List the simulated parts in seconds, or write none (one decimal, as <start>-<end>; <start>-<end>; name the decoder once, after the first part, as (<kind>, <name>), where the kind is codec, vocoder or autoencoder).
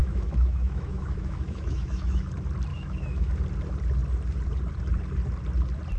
0.0-2.3 (autoencoder, DAC-VAE); 2.7-3.3